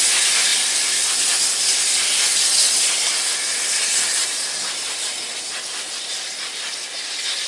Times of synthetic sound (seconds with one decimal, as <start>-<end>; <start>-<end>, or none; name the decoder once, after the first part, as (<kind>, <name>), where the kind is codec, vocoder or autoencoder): none